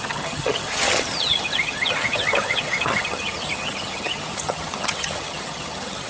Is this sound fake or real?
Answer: fake